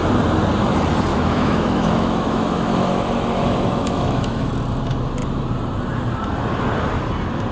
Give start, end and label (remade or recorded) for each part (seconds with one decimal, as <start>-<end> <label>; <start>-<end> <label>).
0.0-1.1 recorded; 1.1-4.5 remade; 4.5-7.5 recorded